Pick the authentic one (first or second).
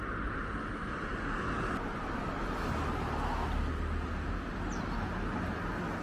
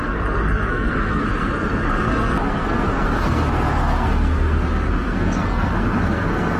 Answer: first